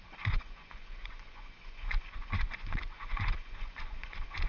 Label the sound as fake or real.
fake